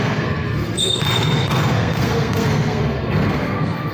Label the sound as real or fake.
fake